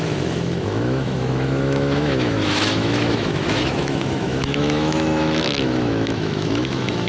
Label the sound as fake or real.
fake